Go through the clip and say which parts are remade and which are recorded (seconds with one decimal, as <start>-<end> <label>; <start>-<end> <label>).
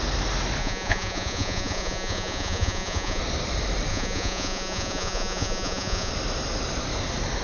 0.0-0.6 recorded; 0.6-3.2 remade; 3.2-3.9 recorded; 3.9-6.1 remade; 6.1-7.4 recorded